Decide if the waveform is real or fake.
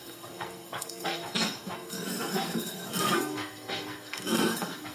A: fake